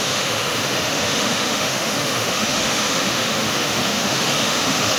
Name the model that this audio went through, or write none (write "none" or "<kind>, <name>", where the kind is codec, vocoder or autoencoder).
autoencoder, DAC-VAE